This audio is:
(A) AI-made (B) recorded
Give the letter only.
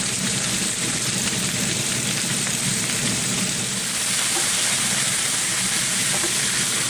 A